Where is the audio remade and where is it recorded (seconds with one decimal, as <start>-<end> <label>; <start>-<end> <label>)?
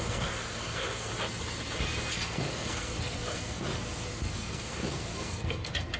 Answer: 0.0-1.1 remade; 1.1-2.1 recorded; 2.1-6.0 remade